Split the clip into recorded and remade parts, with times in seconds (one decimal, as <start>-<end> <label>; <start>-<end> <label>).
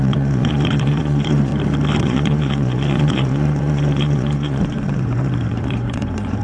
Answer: 0.0-1.5 remade; 1.5-2.0 recorded; 2.0-6.4 remade